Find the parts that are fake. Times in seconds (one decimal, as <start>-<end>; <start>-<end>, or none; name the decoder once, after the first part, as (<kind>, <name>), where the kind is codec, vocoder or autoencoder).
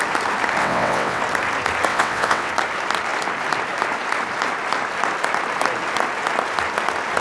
0.6-1.2 (vocoder, WaveNeXt); 1.9-2.5